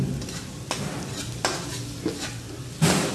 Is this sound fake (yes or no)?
no